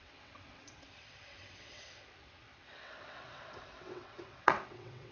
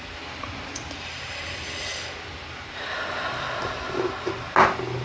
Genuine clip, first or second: second